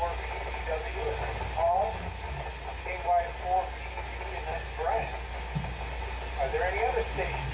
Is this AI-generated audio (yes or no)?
no